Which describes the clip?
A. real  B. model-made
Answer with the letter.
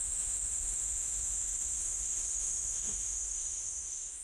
B